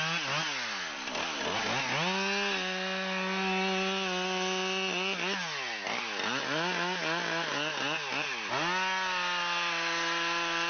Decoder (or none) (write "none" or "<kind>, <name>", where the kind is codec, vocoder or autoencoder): none